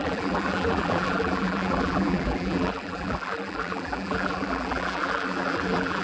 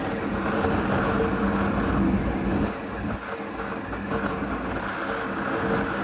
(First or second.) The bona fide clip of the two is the second